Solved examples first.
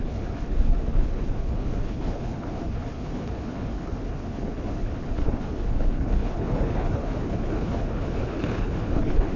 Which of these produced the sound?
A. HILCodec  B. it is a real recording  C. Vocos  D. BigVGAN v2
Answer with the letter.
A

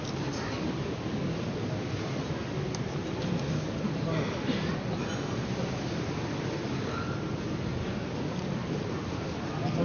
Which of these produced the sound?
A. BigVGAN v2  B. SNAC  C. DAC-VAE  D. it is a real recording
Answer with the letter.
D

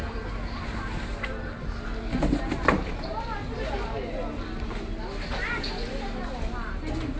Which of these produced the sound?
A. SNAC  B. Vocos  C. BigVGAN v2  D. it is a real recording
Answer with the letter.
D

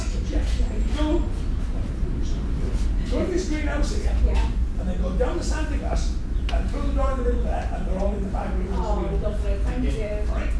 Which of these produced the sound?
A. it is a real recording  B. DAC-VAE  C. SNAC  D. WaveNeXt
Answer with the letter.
A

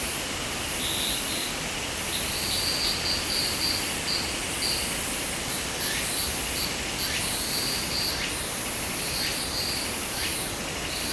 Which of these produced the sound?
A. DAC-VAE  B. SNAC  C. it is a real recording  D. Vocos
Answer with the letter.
C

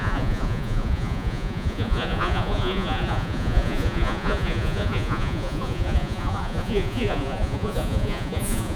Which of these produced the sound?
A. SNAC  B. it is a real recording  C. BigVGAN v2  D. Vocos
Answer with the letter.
D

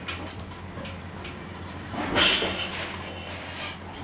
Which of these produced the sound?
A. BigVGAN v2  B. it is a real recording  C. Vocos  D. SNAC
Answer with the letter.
B